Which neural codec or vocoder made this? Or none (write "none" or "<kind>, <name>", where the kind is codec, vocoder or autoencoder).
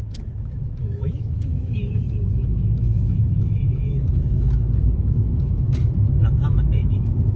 autoencoder, DAC-VAE